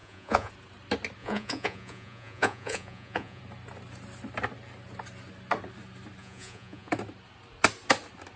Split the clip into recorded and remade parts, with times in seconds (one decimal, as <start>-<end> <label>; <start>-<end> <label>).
0.0-0.5 remade; 0.5-1.2 recorded; 1.2-3.4 remade; 3.4-6.2 recorded; 6.2-6.9 remade; 6.9-8.4 recorded